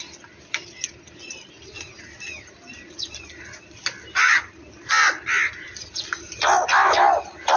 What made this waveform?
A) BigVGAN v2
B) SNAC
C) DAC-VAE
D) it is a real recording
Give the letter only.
A